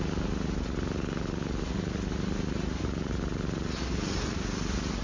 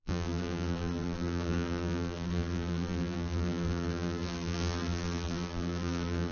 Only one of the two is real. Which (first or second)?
first